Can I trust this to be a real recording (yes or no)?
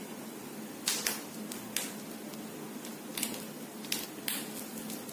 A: yes